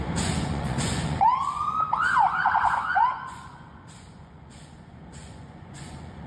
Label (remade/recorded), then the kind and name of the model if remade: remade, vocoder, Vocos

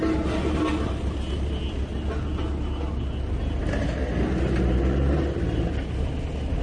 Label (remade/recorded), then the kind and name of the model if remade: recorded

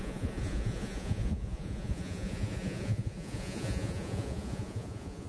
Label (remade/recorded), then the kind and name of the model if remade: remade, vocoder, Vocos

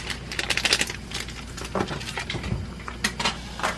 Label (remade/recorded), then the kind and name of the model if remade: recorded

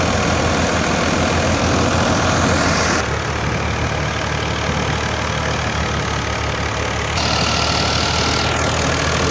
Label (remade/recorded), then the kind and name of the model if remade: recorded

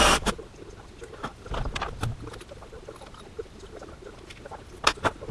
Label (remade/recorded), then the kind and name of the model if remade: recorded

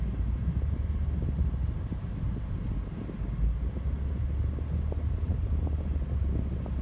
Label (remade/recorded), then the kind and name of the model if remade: recorded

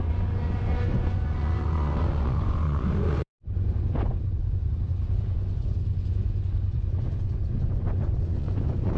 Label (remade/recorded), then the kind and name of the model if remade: remade, vocoder, Vocos